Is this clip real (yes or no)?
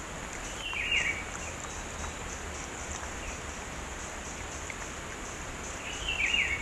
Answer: no